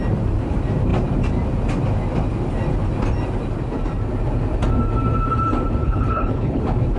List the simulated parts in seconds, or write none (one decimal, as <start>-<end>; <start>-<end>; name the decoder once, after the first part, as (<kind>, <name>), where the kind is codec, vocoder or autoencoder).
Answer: 5.8-6.6 (codec, HILCodec)